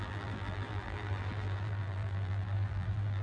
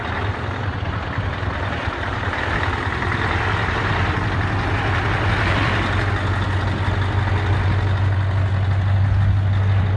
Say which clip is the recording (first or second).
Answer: second